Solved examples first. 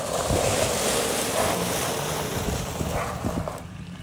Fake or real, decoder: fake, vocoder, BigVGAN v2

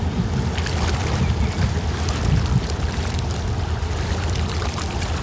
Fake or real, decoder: real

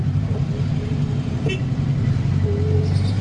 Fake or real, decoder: real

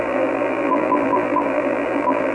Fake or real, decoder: fake, vocoder, BigVGAN v2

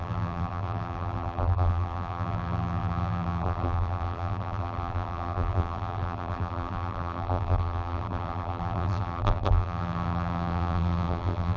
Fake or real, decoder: fake, vocoder, BigVGAN v2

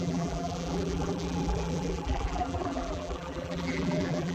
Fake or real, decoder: fake, vocoder, BigVGAN v2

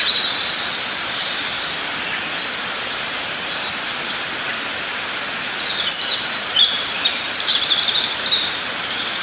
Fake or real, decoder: fake, vocoder, BigVGAN v2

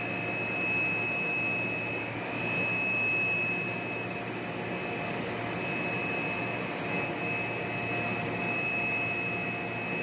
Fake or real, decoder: real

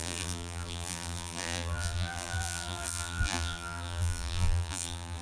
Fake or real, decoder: fake, vocoder, BigVGAN v2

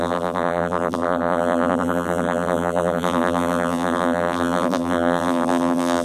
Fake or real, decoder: fake, vocoder, BigVGAN v2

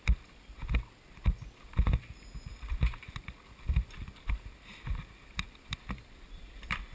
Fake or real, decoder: fake, vocoder, BigVGAN v2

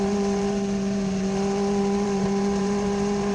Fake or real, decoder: fake, vocoder, BigVGAN v2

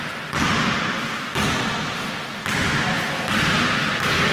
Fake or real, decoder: real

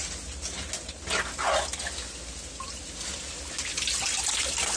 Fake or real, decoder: real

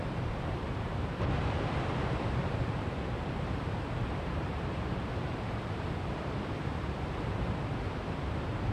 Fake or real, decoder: fake, vocoder, BigVGAN v2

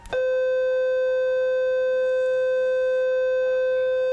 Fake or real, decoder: real